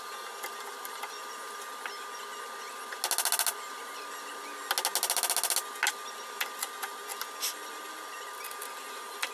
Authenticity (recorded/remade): recorded